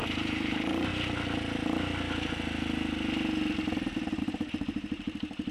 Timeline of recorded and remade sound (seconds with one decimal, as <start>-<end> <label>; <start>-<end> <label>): 0.0-0.9 remade; 0.9-4.2 recorded; 4.2-5.5 remade